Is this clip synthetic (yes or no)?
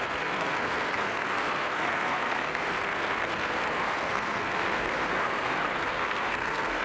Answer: yes